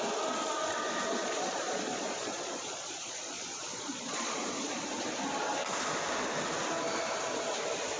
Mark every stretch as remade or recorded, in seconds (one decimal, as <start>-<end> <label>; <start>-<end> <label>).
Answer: 0.0-1.2 recorded; 1.2-4.8 remade; 4.8-8.0 recorded